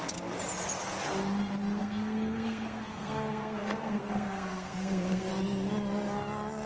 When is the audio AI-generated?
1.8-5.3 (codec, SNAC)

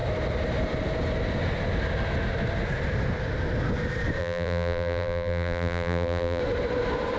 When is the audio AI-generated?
4.2-6.4 (vocoder, BigVGAN v2)

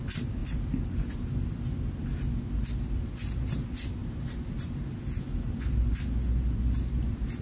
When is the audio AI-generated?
none

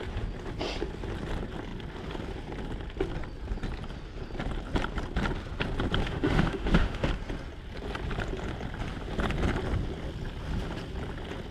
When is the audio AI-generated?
6.0-7.1 (autoencoder, DAC-VAE)

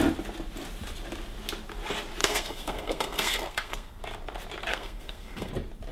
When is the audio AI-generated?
2.2-4.0 (codec, SNAC); 4.7-5.5